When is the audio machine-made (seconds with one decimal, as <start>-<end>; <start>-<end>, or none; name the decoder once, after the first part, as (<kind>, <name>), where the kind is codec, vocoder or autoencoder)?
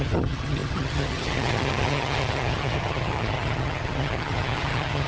0.0-5.1 (vocoder, HiFi-GAN)